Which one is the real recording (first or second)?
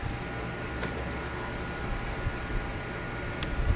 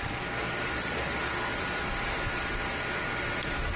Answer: first